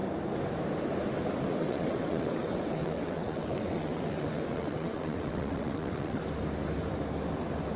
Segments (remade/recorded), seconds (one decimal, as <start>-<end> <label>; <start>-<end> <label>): 0.0-1.6 recorded; 1.6-6.2 remade; 6.2-7.8 recorded